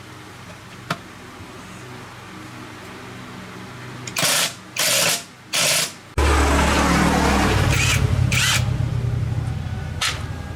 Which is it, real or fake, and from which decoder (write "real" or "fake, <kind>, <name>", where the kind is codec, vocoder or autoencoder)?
real